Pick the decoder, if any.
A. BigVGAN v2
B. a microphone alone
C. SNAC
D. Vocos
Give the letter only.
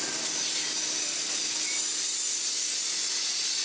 B